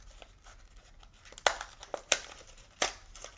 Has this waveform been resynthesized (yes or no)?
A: no